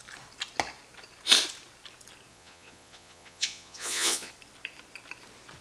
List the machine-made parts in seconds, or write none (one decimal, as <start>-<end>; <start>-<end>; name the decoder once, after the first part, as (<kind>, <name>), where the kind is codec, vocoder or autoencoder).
2.3-4.3 (vocoder, Vocos)